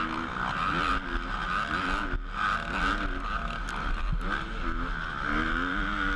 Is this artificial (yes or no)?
no